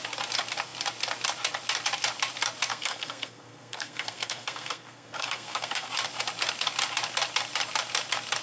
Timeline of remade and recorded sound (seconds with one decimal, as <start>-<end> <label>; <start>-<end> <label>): 0.0-2.7 recorded; 2.7-5.9 remade; 5.9-8.4 recorded